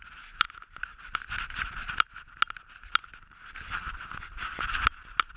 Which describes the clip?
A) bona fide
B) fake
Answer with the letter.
A